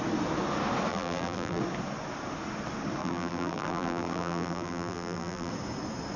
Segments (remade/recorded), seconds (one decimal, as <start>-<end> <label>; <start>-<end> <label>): 0.0-0.9 recorded; 0.9-1.6 remade; 1.6-3.0 recorded; 3.0-5.5 remade; 5.5-6.2 recorded